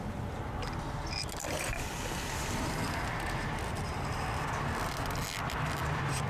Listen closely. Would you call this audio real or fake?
real